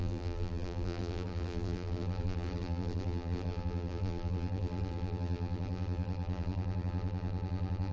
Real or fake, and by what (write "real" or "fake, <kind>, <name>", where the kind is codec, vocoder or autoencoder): fake, vocoder, BigVGAN v2